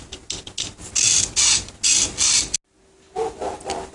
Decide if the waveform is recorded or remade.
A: recorded